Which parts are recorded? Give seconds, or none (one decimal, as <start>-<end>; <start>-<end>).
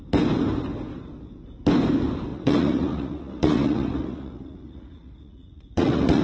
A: 0.0-2.3